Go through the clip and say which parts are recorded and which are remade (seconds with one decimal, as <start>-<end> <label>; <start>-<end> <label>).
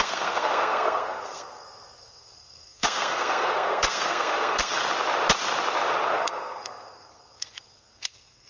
0.0-4.8 remade; 4.8-6.1 recorded; 6.1-8.5 remade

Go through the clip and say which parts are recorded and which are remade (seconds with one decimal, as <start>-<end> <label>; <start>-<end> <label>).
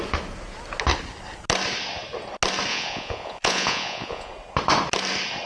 0.0-2.7 recorded; 2.7-4.3 remade; 4.3-5.5 recorded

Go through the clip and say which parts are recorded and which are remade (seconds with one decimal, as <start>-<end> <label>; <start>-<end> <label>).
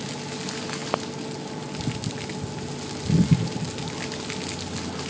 0.0-5.1 recorded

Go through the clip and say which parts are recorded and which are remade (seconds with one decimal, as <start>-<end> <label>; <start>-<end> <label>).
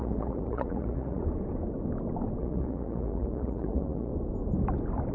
0.0-1.2 remade; 1.2-2.4 recorded; 2.4-4.1 remade; 4.1-5.1 recorded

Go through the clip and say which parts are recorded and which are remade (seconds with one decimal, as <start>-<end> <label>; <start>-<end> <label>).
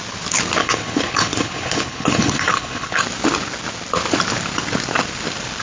0.0-0.6 recorded; 0.6-3.0 remade; 3.0-5.6 recorded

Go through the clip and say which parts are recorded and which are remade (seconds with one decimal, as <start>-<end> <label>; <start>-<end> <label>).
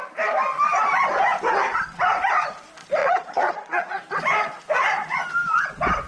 0.0-3.0 recorded; 3.0-4.0 remade; 4.0-6.1 recorded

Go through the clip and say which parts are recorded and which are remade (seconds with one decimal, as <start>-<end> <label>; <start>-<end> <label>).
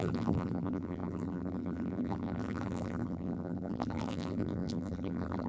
0.0-5.5 remade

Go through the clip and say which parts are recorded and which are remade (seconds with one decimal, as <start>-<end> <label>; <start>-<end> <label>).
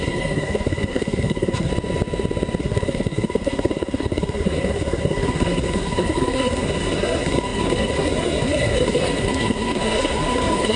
0.0-1.7 remade; 1.7-2.6 recorded; 2.6-10.8 remade